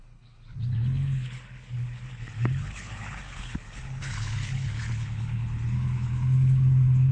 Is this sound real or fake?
fake